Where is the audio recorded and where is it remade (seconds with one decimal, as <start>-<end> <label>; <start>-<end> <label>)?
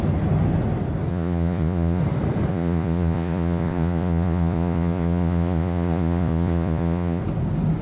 0.0-1.1 recorded; 1.1-2.0 remade; 2.0-2.5 recorded; 2.5-7.2 remade; 7.2-7.8 recorded